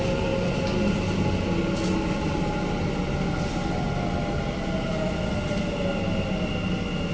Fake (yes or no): no